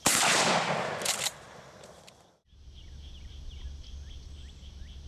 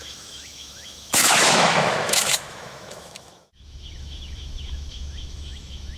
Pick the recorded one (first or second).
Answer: first